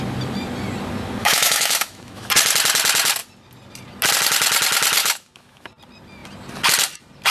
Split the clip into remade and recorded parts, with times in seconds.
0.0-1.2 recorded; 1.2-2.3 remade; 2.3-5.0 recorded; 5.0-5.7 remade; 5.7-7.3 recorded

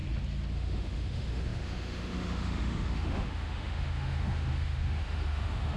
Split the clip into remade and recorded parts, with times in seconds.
0.0-0.5 recorded; 0.5-5.8 remade

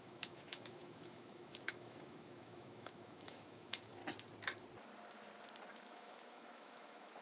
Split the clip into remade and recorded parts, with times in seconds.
0.0-4.0 remade; 4.0-5.7 recorded; 5.7-7.2 remade

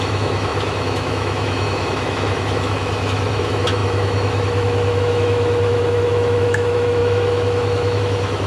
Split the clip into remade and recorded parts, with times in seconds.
0.0-8.5 remade

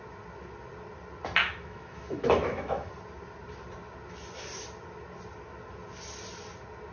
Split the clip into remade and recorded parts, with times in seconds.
0.0-1.4 recorded; 1.4-2.9 remade; 2.9-6.9 recorded

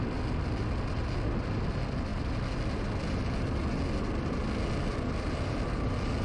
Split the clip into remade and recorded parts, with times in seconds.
0.0-6.2 recorded

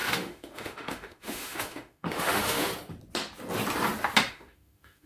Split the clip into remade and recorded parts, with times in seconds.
0.0-2.7 remade; 2.7-4.3 recorded; 4.3-5.1 remade

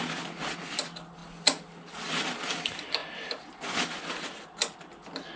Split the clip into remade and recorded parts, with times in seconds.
0.0-5.4 recorded